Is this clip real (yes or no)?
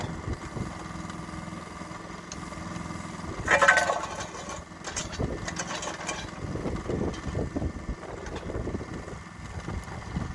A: yes